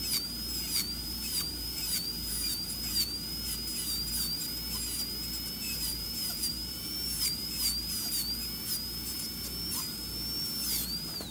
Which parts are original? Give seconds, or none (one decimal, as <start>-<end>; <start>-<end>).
0.0-1.0; 2.8-5.9; 7.5-11.3